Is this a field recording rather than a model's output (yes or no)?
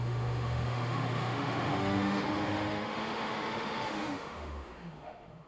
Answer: no